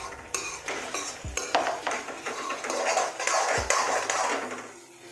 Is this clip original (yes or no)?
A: yes